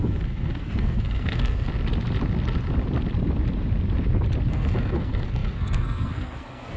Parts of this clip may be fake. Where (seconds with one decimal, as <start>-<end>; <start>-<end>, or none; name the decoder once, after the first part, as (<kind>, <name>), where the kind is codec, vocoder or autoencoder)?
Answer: 0.0-1.7 (codec, SNAC); 4.5-6.8